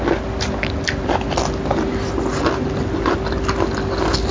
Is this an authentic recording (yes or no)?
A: yes